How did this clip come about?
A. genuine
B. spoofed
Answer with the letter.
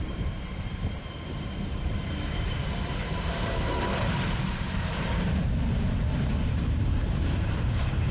B